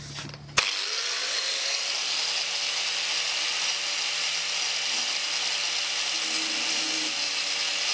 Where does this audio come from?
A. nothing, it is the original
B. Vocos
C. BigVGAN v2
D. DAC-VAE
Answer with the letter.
A